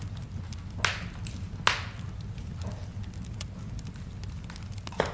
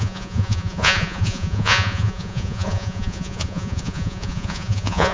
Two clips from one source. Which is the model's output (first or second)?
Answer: second